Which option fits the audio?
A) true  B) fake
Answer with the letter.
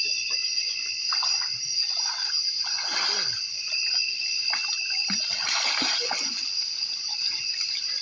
A